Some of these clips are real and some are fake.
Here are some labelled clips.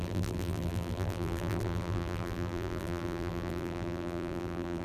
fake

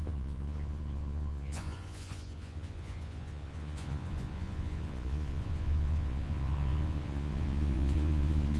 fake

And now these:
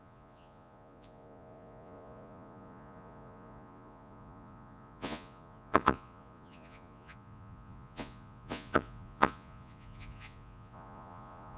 fake